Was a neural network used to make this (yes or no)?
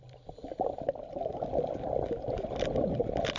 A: yes